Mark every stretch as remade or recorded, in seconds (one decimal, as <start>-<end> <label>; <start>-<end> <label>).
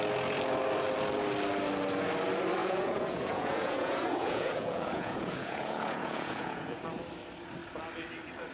0.0-2.6 recorded; 2.6-6.8 remade; 6.8-8.5 recorded